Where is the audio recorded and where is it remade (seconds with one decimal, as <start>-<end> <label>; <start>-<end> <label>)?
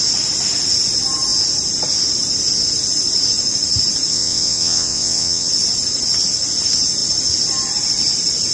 0.0-4.1 recorded; 4.1-5.5 remade; 5.5-8.5 recorded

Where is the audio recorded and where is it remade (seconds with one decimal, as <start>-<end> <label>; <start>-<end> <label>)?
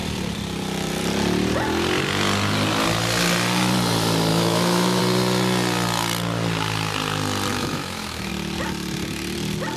0.0-4.3 recorded; 4.3-5.0 remade; 5.0-7.5 recorded; 7.5-8.3 remade; 8.3-9.8 recorded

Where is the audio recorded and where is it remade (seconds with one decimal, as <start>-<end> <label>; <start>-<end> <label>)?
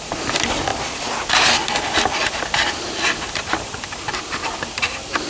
0.0-5.3 recorded